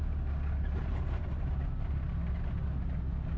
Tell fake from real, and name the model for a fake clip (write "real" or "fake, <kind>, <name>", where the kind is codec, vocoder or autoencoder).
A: real